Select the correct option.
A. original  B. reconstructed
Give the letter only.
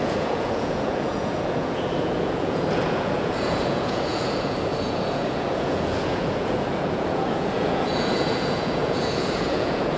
B